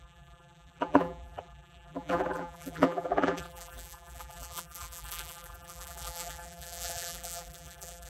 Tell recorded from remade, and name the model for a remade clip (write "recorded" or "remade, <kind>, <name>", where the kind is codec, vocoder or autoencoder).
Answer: remade, vocoder, BigVGAN v2